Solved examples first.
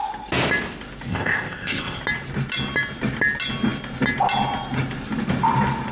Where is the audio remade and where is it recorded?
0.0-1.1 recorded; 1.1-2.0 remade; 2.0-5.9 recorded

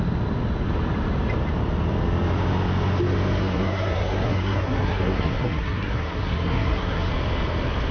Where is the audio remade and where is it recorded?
0.0-3.4 recorded; 3.4-7.1 remade; 7.1-7.9 recorded

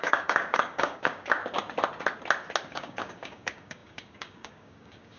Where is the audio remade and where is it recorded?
0.0-1.4 remade; 1.4-2.7 recorded; 2.7-5.2 remade

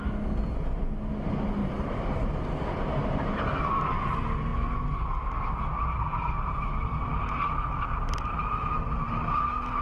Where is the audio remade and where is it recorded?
0.0-1.6 recorded; 1.6-2.3 remade; 2.3-9.8 recorded

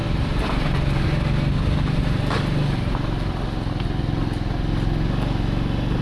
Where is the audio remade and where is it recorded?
0.0-6.0 recorded

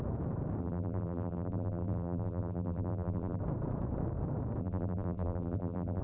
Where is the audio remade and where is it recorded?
0.0-0.6 recorded; 0.6-3.4 remade; 3.4-4.6 recorded; 4.6-6.0 remade

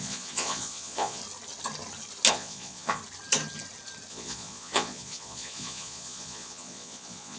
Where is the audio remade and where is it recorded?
0.0-1.2 remade; 1.2-2.3 recorded; 2.3-3.0 remade; 3.0-4.1 recorded; 4.1-7.4 remade